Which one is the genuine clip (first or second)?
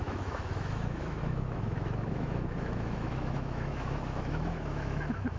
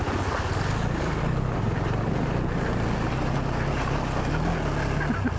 second